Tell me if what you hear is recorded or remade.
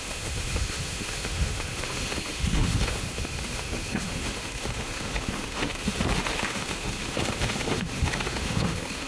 remade